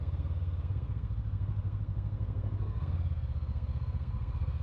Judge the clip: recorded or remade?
remade